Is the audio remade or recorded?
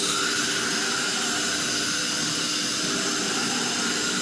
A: recorded